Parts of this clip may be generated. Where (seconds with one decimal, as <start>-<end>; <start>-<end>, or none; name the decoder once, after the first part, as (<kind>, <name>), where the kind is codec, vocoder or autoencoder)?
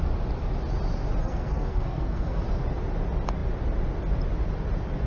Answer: 1.2-2.4 (codec, SNAC)